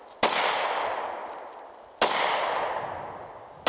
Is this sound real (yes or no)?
yes